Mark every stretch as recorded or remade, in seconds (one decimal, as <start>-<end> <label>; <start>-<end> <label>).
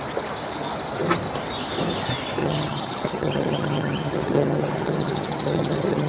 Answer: 0.0-2.4 recorded; 2.4-6.1 remade